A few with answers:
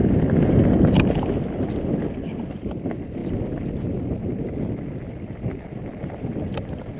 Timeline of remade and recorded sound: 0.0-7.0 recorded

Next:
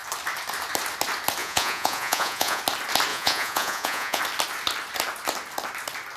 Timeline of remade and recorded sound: 0.0-1.4 recorded; 1.4-2.6 remade; 2.6-3.1 recorded; 3.1-4.2 remade; 4.2-6.2 recorded